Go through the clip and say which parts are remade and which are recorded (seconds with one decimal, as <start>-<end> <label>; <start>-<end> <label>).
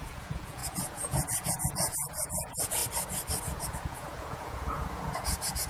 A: 0.0-2.8 remade; 2.8-3.4 recorded; 3.4-5.7 remade